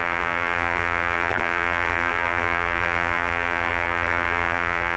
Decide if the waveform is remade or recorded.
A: remade